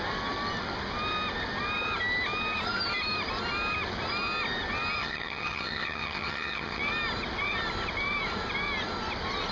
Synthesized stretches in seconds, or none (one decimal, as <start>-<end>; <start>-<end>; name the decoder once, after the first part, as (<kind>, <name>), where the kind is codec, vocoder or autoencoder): 5.0-6.8 (vocoder, HiFi-GAN)